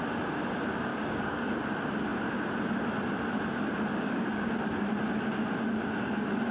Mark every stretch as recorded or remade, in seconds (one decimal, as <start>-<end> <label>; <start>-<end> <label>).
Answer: 0.0-0.9 recorded; 0.9-1.5 remade; 1.5-3.9 recorded; 3.9-4.5 remade; 4.5-6.5 recorded